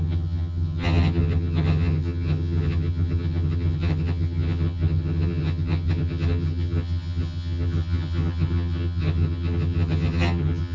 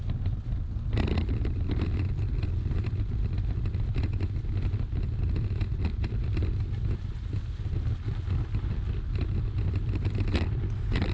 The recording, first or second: second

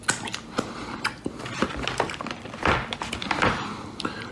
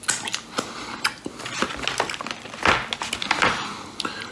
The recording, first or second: second